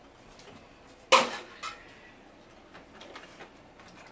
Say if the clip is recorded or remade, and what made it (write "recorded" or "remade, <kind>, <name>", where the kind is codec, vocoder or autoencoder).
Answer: recorded